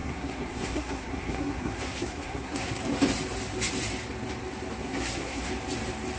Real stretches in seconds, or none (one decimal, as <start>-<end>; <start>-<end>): 2.8-4.8; 5.5-6.2